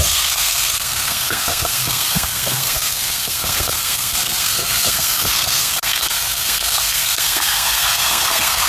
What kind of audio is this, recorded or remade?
remade